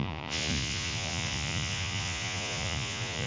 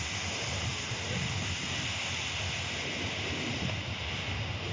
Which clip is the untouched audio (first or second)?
second